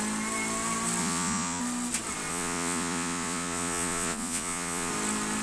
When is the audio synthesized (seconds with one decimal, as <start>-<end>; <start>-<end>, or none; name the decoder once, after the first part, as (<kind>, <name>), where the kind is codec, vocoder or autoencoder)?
1.0-1.6 (vocoder, Vocos); 2.3-4.9